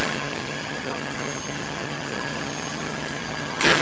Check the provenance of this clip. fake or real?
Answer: fake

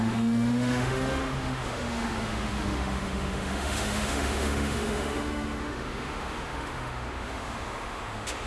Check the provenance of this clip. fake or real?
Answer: fake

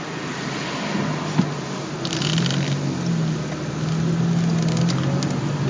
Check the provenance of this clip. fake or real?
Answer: real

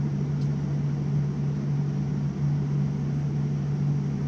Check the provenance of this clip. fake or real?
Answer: real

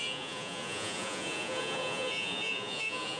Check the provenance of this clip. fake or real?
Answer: fake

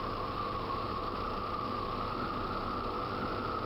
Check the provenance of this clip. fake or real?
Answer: real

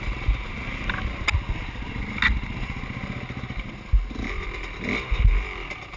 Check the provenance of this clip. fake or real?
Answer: real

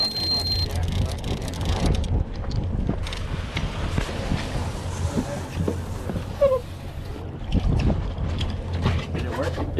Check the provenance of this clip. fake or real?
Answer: real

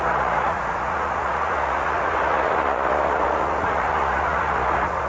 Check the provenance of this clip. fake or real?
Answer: fake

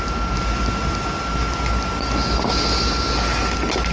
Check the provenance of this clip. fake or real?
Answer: real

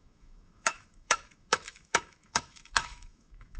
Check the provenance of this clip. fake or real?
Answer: fake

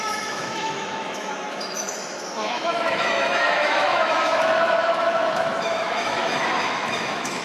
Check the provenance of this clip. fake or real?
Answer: fake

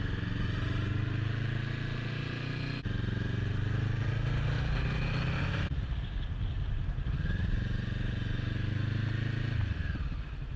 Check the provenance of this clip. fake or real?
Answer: real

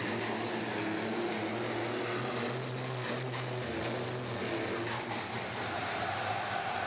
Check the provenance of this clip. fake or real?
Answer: real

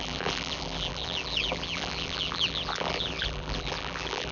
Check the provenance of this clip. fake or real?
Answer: fake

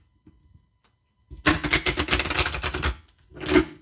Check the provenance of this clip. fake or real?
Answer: real